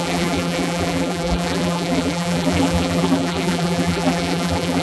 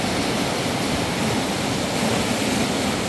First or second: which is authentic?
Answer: second